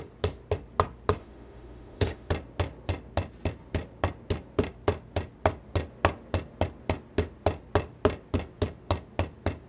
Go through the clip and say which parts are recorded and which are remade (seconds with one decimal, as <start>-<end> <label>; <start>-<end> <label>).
0.0-1.2 recorded; 1.2-2.3 remade; 2.3-9.7 recorded

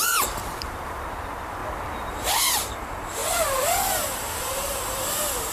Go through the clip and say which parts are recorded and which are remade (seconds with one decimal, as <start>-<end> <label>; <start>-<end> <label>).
0.0-1.6 remade; 1.6-2.4 recorded; 2.4-3.2 remade; 3.2-3.9 recorded; 3.9-5.5 remade